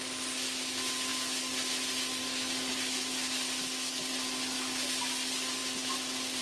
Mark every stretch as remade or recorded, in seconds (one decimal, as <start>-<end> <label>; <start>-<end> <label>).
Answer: 0.0-6.4 recorded